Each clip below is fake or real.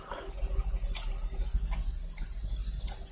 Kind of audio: real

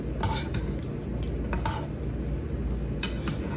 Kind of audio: real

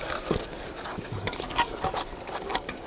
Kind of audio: fake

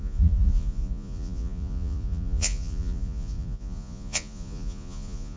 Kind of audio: fake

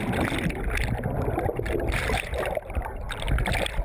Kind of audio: real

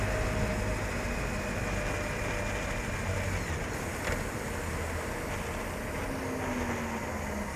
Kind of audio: real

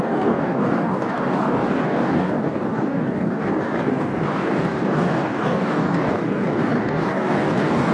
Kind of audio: fake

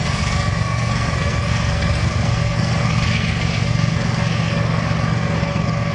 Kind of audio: fake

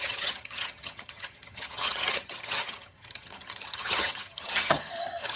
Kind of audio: fake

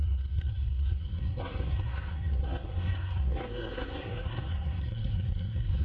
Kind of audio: fake